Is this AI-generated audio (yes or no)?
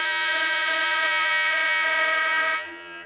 yes